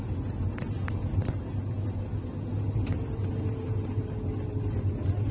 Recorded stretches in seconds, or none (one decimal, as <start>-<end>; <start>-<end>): 0.0-5.3